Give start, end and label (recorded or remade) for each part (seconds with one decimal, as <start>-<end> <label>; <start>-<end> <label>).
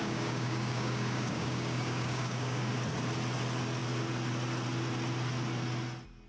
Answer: 0.0-2.7 remade; 2.7-6.3 recorded